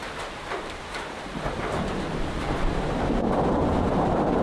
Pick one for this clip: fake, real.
fake